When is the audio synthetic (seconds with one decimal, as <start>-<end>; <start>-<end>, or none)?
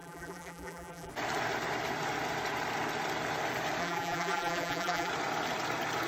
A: 0.0-1.1; 3.8-5.1